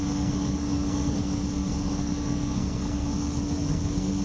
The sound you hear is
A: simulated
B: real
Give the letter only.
A